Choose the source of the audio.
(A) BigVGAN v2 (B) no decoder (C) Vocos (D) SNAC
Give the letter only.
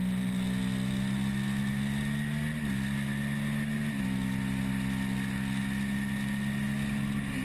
B